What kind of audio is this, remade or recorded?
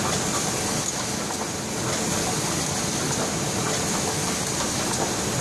recorded